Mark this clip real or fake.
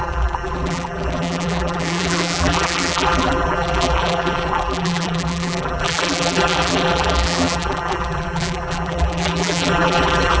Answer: fake